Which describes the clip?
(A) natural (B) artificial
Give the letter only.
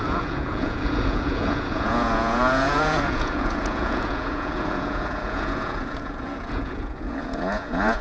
B